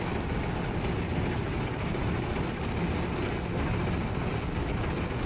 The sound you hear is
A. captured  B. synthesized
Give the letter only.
A